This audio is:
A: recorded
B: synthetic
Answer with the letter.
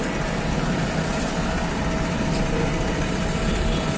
A